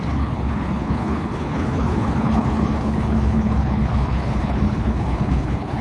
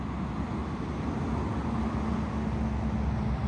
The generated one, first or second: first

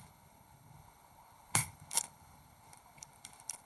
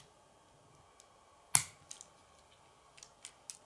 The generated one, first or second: first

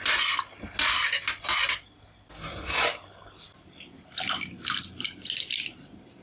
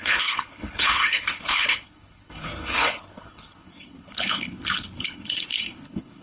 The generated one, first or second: second